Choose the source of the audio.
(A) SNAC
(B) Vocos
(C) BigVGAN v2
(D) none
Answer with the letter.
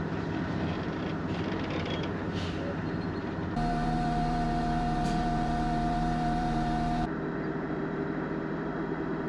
C